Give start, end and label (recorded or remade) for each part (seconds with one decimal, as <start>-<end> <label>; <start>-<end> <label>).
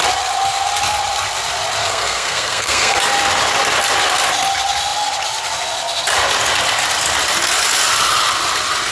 0.0-1.8 recorded; 1.8-3.0 remade; 3.0-8.9 recorded